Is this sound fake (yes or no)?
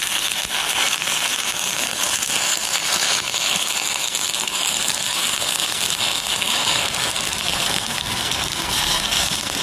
yes